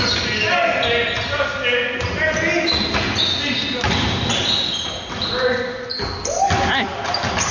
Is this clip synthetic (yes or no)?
no